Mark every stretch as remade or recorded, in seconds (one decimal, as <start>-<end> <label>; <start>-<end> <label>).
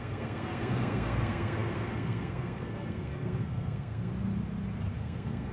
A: 0.0-4.1 remade; 4.1-4.9 recorded; 4.9-5.5 remade